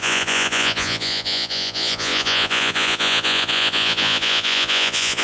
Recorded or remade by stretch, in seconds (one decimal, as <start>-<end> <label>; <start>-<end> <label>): 0.0-5.2 remade